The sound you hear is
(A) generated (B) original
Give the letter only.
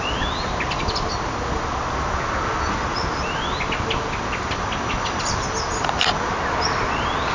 B